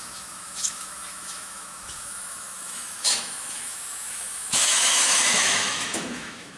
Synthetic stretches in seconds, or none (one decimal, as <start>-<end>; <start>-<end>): 0.0-6.6